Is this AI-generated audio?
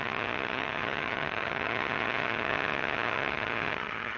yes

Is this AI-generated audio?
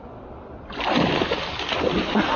no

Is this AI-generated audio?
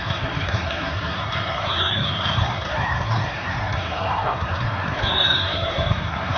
yes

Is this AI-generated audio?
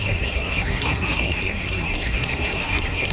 yes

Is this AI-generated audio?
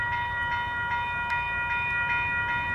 no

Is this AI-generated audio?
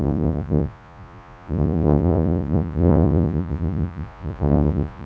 yes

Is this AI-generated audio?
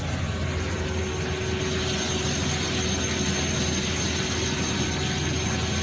no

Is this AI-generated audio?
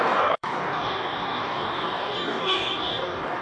yes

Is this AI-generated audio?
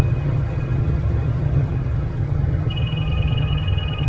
yes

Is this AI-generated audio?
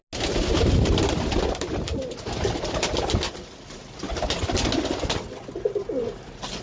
no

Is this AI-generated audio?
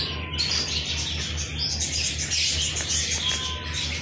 no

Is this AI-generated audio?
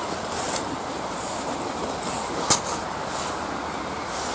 no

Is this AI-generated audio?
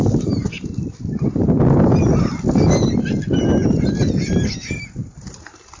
no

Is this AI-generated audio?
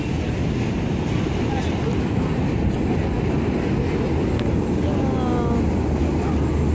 no